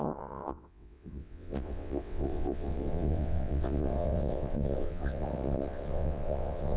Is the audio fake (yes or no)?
yes